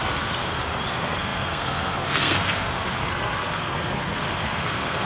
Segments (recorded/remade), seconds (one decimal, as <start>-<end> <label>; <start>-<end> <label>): 0.0-0.4 remade; 0.4-0.9 recorded; 0.9-5.1 remade